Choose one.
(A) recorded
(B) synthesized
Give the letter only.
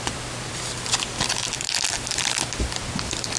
B